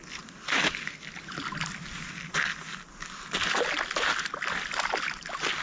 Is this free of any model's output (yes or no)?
yes